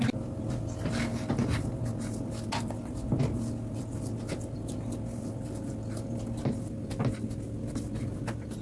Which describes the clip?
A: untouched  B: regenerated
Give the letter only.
A